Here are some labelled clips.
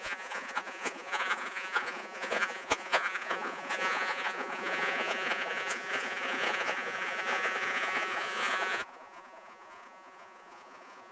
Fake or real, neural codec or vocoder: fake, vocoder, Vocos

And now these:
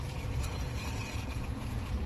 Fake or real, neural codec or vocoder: fake, vocoder, Vocos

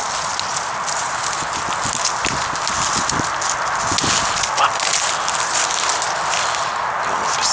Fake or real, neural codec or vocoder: real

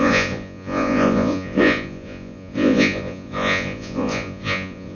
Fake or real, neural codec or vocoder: fake, vocoder, Vocos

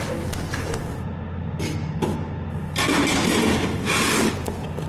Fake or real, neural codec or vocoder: real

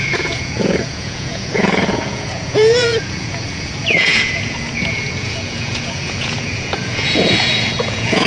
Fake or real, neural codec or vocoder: fake, vocoder, Vocos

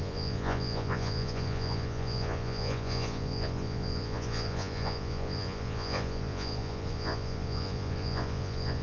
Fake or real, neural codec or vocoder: fake, vocoder, Vocos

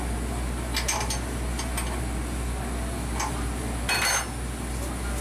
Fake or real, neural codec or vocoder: real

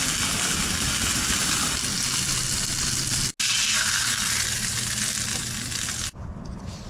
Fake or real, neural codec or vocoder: real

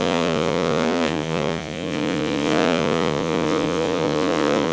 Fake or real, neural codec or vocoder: fake, vocoder, Vocos